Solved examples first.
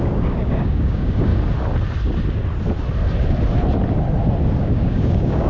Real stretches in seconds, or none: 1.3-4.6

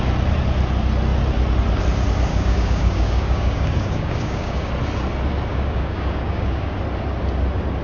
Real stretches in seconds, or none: 0.0-2.3; 4.7-5.5; 6.8-7.8

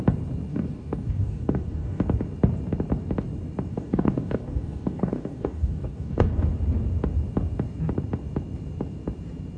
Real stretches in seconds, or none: 0.0-0.5; 2.0-3.7; 6.3-9.6

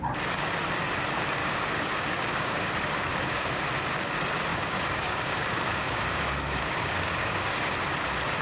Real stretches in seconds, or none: 0.0-1.4; 2.7-3.1; 3.6-4.5; 7.7-8.4

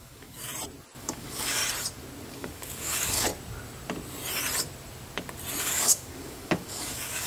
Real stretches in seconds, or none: 0.5-1.0; 1.6-2.3; 3.3-5.6